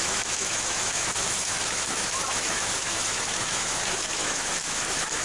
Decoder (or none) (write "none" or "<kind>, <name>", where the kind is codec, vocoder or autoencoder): autoencoder, DAC-VAE